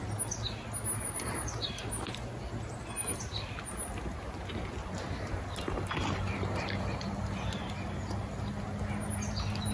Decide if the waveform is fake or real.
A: real